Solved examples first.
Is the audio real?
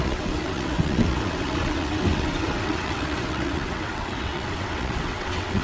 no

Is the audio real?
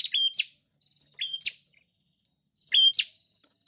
yes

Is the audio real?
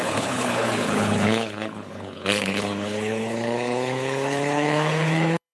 no